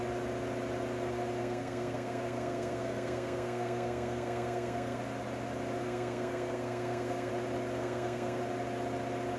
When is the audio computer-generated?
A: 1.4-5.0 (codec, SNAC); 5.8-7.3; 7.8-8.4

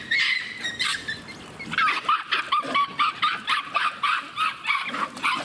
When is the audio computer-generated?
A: none

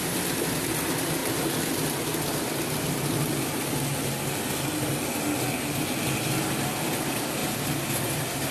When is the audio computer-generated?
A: none

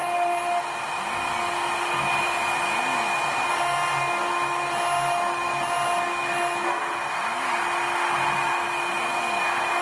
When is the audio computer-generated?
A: none